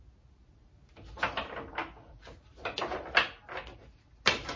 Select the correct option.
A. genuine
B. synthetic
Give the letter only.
A